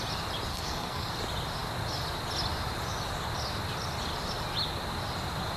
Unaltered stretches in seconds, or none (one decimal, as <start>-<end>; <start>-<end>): 0.0-0.5; 1.1-5.6